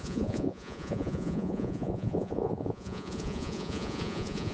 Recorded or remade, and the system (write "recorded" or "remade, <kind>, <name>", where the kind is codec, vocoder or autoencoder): remade, vocoder, Vocos